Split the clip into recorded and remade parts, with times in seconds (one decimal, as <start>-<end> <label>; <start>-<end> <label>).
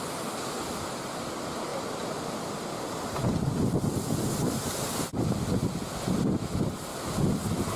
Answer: 0.0-7.8 remade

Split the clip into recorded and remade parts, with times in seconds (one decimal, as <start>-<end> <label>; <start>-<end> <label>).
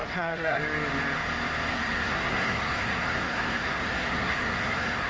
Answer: 0.0-0.6 remade; 0.6-1.7 recorded; 1.7-5.1 remade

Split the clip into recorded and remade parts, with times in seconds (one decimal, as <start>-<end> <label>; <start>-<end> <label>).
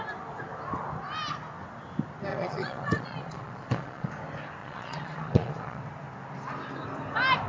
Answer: 0.0-2.3 recorded; 2.3-4.1 remade; 4.1-4.6 recorded; 4.6-5.8 remade; 5.8-7.5 recorded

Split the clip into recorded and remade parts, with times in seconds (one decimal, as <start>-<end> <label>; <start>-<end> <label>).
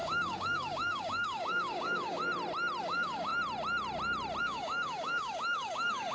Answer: 0.0-2.2 remade; 2.2-2.8 recorded; 2.8-3.3 remade; 3.3-4.4 recorded; 4.4-6.1 remade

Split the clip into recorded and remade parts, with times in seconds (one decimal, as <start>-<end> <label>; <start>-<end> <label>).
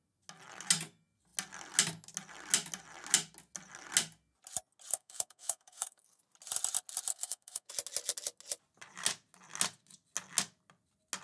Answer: 0.0-4.9 recorded; 4.9-6.2 remade; 6.2-7.1 recorded; 7.1-7.7 remade; 7.7-11.2 recorded